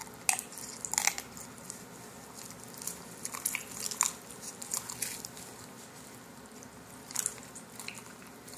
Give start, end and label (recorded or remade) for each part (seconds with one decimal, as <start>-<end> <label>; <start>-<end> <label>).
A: 0.0-8.6 recorded